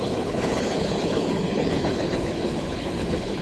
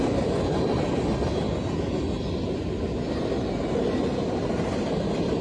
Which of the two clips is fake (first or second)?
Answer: first